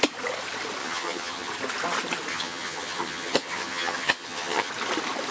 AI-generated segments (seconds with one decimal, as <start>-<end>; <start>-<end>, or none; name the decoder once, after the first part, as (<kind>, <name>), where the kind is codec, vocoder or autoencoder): 0.8-1.5 (vocoder, HiFi-GAN); 2.3-4.7